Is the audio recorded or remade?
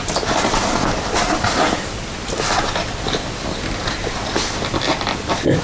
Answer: recorded